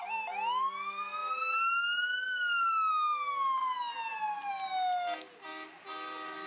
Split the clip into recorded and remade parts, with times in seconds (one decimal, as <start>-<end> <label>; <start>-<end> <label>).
0.0-6.5 recorded